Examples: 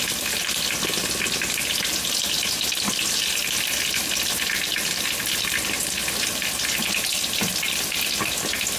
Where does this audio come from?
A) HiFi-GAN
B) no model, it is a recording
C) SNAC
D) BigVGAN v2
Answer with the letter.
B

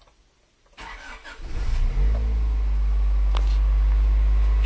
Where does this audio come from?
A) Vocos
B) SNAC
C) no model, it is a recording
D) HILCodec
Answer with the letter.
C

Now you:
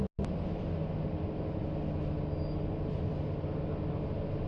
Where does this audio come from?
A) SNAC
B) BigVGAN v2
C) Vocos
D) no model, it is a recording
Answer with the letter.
D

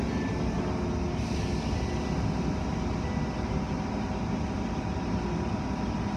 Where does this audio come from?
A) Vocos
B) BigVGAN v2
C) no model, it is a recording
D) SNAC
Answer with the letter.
C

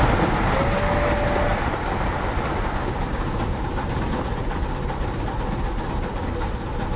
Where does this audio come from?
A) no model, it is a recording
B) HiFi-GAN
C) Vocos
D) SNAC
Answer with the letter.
A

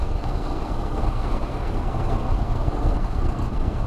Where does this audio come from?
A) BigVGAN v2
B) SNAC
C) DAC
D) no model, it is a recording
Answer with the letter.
B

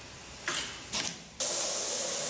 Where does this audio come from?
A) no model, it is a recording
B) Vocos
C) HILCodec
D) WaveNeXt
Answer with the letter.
A